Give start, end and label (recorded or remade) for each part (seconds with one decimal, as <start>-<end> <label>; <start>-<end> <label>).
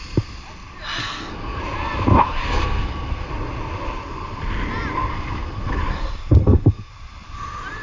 0.0-1.0 recorded; 1.0-1.6 remade; 1.6-2.2 recorded; 2.2-3.3 remade; 3.3-5.1 recorded; 5.1-5.8 remade; 5.8-6.4 recorded; 6.4-6.9 remade; 6.9-7.8 recorded